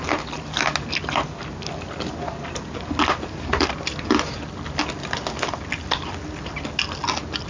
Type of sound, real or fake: real